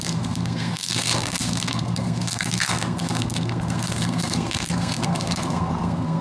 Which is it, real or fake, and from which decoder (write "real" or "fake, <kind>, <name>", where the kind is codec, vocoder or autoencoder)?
fake, codec, SNAC